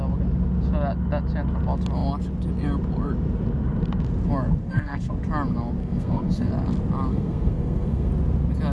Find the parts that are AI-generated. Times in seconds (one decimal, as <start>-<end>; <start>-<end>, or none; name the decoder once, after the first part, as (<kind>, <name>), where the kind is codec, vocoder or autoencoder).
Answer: 4.6-5.1 (codec, SNAC); 5.8-6.5; 7.1-8.1